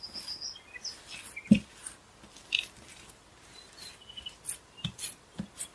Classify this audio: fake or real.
real